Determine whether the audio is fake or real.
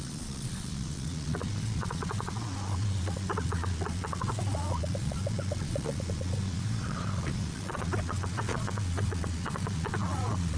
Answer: fake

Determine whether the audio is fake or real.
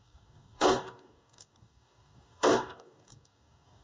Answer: fake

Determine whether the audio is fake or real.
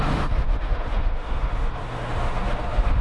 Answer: fake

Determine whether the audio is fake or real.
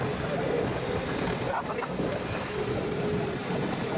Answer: real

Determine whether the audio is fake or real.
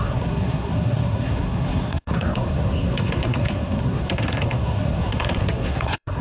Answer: fake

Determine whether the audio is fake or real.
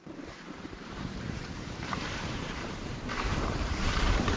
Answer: fake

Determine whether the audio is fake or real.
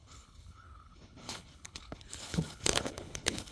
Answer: fake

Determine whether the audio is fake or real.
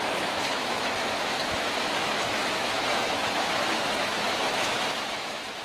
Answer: fake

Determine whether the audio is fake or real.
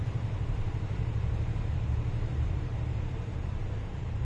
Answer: fake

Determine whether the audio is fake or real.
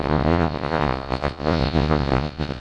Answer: fake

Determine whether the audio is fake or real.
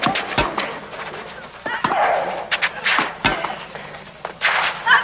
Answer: real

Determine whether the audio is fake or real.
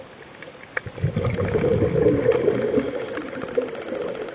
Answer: real